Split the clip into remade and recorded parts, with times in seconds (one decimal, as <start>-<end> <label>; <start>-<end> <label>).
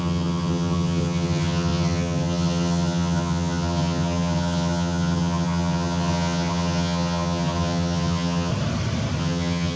0.0-8.5 remade; 8.5-9.2 recorded; 9.2-9.8 remade